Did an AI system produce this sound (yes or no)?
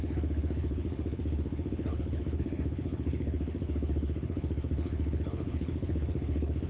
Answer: yes